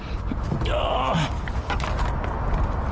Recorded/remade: recorded